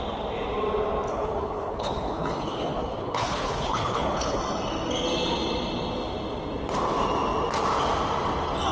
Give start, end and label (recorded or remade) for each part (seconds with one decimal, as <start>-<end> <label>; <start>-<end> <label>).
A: 0.0-1.1 recorded; 1.1-4.4 remade; 4.4-8.7 recorded